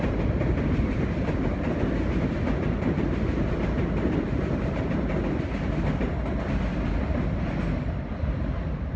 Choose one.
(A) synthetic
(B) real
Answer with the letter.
B